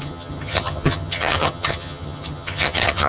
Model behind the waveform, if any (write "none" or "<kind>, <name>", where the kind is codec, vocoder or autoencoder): vocoder, HiFi-GAN